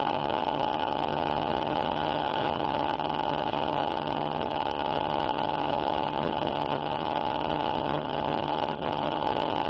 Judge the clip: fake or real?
fake